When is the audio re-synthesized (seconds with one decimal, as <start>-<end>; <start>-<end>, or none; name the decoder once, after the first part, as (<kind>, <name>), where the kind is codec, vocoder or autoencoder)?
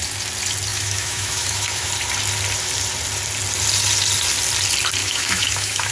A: 0.7-1.9 (autoencoder, DAC-VAE); 5.0-5.9